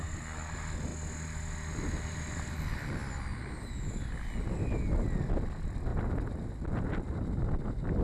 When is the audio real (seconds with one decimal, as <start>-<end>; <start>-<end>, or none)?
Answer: 0.0-8.0